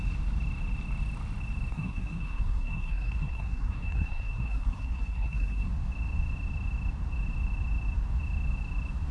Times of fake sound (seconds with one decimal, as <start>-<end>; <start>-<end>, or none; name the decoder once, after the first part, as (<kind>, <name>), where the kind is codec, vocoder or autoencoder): 1.7-5.7 (codec, SNAC)